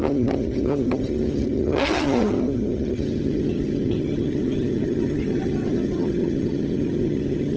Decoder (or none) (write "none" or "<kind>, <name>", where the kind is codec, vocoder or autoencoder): vocoder, HiFi-GAN